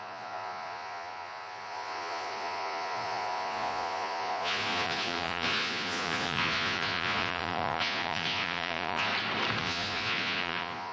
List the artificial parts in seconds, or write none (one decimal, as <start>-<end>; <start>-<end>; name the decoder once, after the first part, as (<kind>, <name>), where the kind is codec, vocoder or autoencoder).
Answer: 0.0-9.1 (vocoder, Vocos); 9.6-10.9